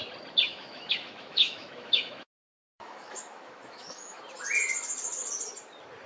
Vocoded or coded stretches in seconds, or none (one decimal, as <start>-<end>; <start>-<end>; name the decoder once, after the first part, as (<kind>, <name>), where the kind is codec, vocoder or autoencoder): 0.5-4.2 (autoencoder, DAC-VAE)